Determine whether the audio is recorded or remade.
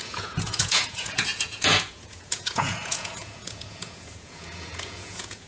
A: remade